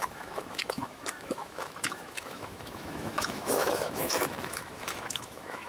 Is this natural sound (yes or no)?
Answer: no